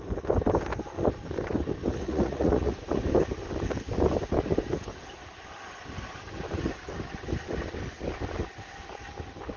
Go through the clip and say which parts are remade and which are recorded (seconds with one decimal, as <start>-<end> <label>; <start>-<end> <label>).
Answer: 0.0-1.9 recorded; 1.9-3.0 remade; 3.0-9.6 recorded